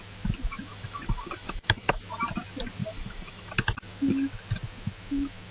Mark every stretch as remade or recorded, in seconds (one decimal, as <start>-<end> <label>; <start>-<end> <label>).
0.0-0.7 recorded; 0.7-2.0 remade; 2.0-2.8 recorded; 2.8-3.5 remade; 3.5-5.5 recorded